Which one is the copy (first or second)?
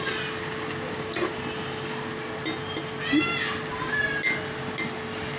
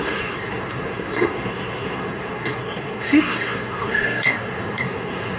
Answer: second